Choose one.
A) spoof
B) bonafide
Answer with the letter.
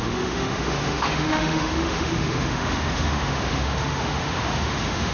A